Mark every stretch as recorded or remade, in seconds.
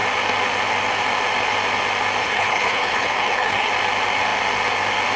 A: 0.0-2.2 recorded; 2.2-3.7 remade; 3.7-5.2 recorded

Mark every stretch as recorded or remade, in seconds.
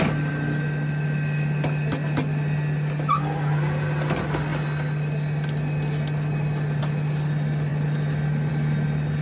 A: 0.0-9.2 recorded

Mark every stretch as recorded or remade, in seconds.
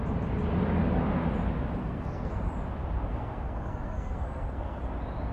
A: 0.0-1.8 recorded; 1.8-2.5 remade; 2.5-3.1 recorded; 3.1-4.8 remade; 4.8-5.3 recorded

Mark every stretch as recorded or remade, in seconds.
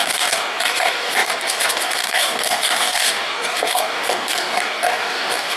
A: 0.0-5.6 remade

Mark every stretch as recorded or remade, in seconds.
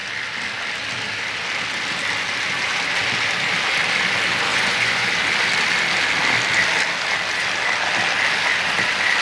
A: 0.0-4.5 recorded; 4.5-5.1 remade; 5.1-9.2 recorded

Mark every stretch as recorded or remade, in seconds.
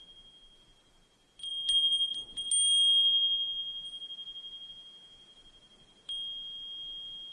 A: 0.0-7.3 recorded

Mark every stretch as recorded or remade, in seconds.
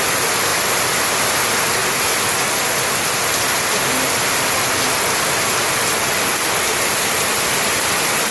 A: 0.0-1.8 remade; 1.8-6.5 recorded; 6.5-8.3 remade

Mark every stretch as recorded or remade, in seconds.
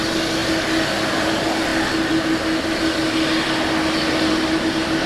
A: 0.0-5.1 recorded